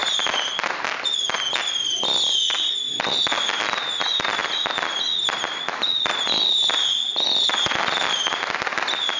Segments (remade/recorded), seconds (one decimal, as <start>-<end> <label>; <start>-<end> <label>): 0.0-9.2 recorded